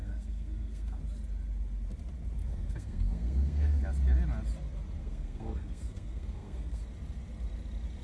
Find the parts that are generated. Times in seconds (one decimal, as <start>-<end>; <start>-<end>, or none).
0.0-1.0; 2.4-3.8; 5.0-6.8